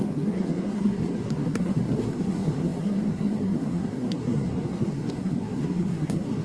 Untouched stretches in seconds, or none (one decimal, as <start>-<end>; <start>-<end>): none